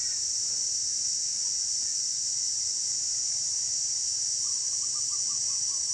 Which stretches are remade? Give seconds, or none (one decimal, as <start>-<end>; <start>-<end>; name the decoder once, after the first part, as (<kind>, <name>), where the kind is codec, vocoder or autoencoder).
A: 1.2-2.8 (vocoder, Vocos)